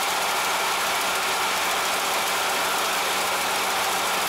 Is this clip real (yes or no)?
yes